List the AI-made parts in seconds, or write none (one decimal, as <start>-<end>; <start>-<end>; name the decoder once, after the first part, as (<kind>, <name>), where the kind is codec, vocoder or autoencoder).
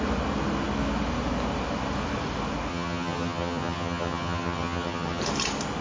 2.7-5.2 (vocoder, HiFi-GAN)